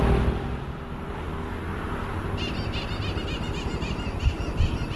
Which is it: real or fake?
real